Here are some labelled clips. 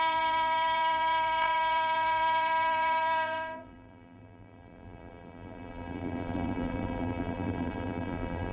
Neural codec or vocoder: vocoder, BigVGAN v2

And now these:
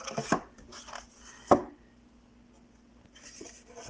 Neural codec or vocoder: none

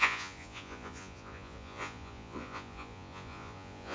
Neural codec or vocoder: vocoder, Vocos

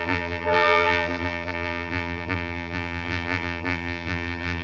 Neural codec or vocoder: vocoder, BigVGAN v2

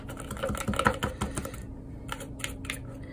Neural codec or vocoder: none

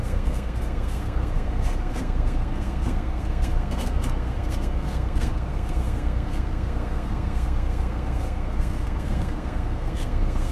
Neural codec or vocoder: codec, SNAC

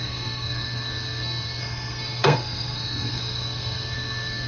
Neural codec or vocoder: codec, SNAC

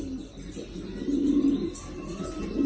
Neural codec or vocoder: none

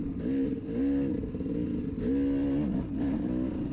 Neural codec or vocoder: none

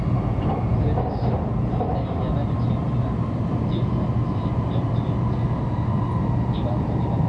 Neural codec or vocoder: none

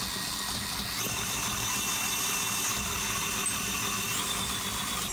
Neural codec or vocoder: none